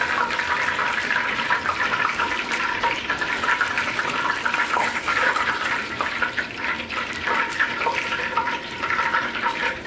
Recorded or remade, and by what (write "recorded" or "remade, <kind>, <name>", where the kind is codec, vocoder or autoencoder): remade, vocoder, BigVGAN v2